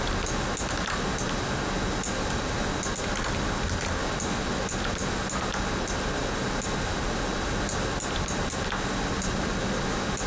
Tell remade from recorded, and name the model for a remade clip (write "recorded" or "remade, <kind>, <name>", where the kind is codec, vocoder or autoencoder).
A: recorded